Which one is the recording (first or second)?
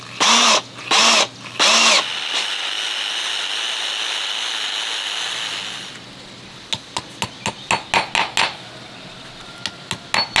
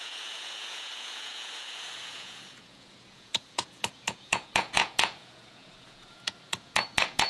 first